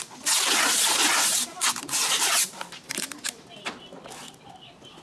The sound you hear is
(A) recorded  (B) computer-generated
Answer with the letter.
A